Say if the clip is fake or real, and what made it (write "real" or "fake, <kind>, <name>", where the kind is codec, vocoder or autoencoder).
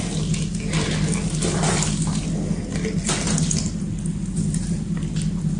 real